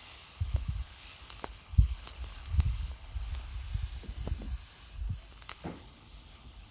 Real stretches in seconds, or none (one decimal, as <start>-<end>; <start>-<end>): 3.5-5.5